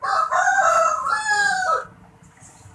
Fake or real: real